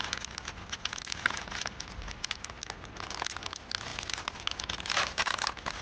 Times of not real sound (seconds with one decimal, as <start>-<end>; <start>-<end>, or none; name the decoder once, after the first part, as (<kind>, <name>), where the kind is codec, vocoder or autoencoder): none